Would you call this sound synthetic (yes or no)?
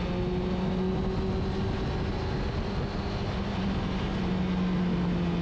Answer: no